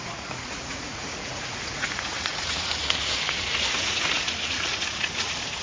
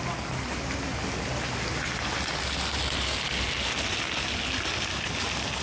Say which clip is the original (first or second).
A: second